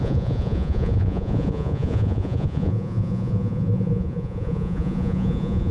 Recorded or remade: remade